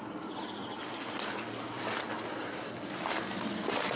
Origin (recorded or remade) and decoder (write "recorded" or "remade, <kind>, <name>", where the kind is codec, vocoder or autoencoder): recorded